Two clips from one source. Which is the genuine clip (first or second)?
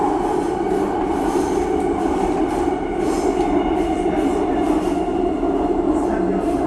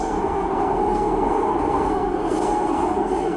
first